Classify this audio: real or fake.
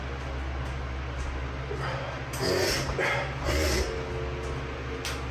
real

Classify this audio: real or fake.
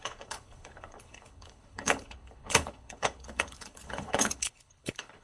fake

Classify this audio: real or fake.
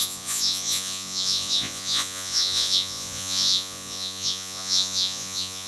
fake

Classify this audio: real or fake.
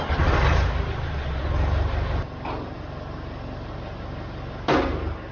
real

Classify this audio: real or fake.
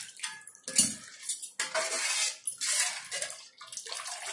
real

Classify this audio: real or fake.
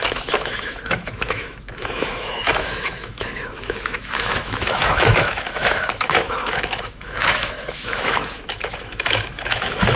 fake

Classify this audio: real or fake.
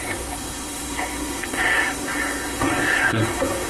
fake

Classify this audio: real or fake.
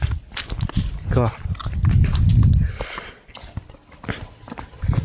real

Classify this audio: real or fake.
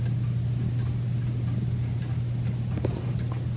real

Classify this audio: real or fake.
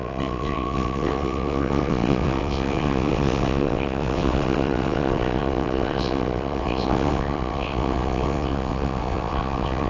fake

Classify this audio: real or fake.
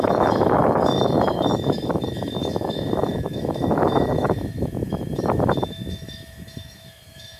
fake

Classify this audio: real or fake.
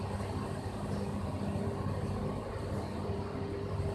real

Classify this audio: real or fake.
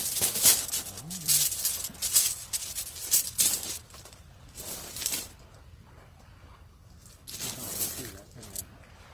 fake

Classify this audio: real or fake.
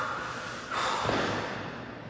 real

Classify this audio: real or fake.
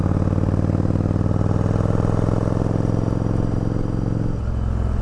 real